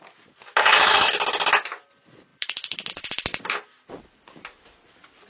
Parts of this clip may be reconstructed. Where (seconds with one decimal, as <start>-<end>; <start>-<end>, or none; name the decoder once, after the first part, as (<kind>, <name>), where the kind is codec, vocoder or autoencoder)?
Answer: 0.6-1.1 (vocoder, HiFi-GAN)